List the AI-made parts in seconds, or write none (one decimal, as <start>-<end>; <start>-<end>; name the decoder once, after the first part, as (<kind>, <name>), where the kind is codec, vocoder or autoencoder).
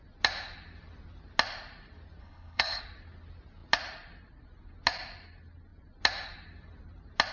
2.2-2.8 (codec, HILCodec)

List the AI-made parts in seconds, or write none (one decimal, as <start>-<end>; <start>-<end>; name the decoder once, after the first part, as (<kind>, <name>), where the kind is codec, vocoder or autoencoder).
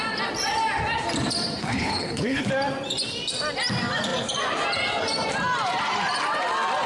1.6-2.5 (codec, HILCodec)